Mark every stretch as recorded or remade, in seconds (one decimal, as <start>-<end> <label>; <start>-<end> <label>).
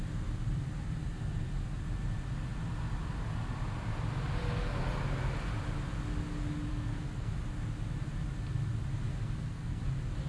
0.0-6.7 recorded; 6.7-7.3 remade; 7.3-9.1 recorded; 9.1-9.8 remade; 9.8-10.3 recorded